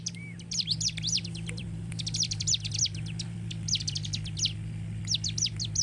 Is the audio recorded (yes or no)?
yes